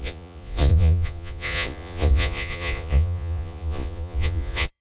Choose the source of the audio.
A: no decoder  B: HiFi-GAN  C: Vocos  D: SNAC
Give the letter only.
C